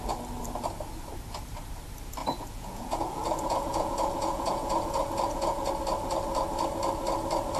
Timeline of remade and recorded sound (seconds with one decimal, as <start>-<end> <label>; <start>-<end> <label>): 0.0-2.2 recorded; 2.2-5.7 remade; 5.7-7.6 recorded